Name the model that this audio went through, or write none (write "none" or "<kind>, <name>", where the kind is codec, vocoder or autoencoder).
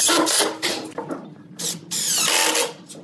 none